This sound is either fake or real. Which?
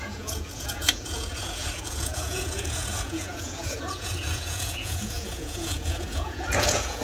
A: fake